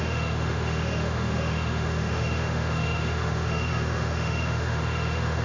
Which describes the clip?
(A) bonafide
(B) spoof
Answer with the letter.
B